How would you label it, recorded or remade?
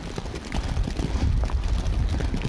recorded